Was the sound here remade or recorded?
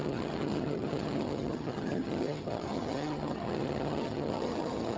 remade